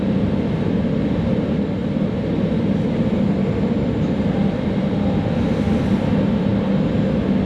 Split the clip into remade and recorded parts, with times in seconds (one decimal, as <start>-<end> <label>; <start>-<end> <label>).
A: 0.0-6.5 remade; 6.5-7.5 recorded